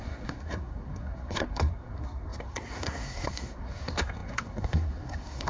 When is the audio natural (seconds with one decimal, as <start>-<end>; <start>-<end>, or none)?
none